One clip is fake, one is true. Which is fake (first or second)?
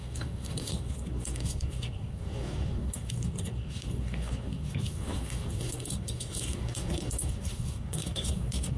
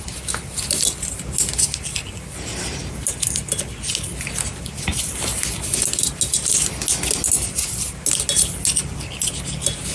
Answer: first